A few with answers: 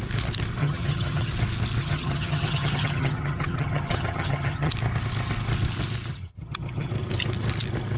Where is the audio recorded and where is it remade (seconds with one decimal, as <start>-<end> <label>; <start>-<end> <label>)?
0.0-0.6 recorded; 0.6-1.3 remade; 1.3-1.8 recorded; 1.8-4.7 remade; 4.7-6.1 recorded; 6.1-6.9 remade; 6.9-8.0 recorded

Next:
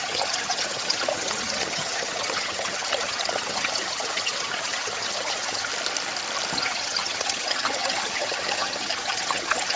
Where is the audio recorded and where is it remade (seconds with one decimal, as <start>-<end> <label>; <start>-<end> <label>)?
0.0-5.7 remade; 5.7-6.5 recorded; 6.5-9.8 remade

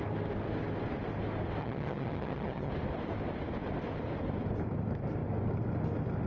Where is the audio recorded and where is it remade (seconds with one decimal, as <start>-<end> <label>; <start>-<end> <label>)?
0.0-1.6 recorded; 1.6-2.7 remade; 2.7-6.3 recorded

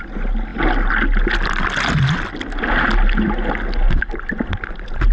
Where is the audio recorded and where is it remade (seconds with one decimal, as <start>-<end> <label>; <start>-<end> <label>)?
0.0-5.1 recorded

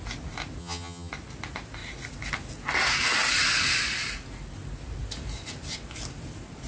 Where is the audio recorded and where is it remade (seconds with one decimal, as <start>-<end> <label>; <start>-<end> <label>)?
0.0-0.6 recorded; 0.6-1.1 remade; 1.1-6.7 recorded